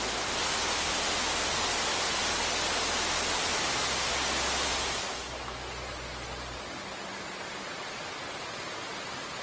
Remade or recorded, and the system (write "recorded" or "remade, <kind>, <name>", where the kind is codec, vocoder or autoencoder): recorded